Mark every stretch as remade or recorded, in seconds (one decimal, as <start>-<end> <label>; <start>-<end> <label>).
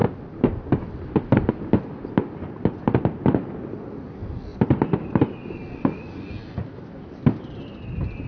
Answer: 0.0-8.3 recorded